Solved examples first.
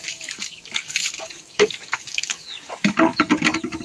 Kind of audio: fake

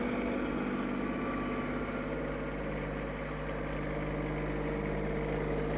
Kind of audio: real